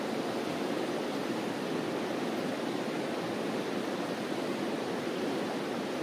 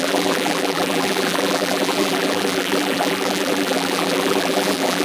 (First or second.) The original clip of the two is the first